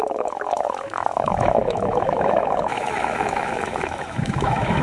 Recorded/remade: remade